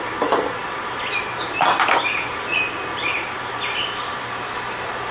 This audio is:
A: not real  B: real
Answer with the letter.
B